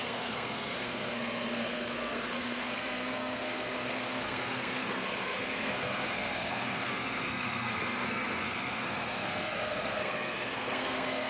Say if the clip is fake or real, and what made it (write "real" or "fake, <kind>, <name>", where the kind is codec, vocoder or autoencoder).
fake, codec, SNAC